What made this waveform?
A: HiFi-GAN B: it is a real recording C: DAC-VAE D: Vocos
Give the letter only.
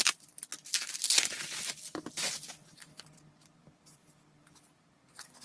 B